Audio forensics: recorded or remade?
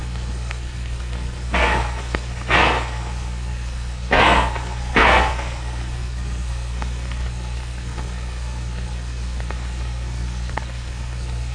remade